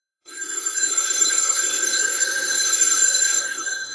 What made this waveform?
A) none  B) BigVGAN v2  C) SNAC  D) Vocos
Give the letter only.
C